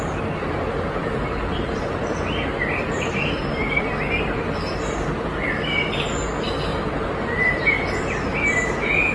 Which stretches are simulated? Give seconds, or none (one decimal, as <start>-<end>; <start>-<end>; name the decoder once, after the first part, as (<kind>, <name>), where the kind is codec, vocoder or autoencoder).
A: 1.0-3.9 (vocoder, BigVGAN v2); 6.7-7.6